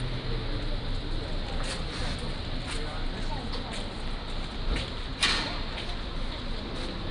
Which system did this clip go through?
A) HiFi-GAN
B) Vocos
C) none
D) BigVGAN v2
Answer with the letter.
C